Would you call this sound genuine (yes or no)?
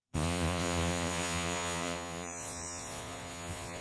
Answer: no